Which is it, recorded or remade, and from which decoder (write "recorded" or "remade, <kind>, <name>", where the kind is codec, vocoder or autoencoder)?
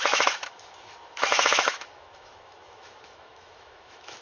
remade, autoencoder, DAC-VAE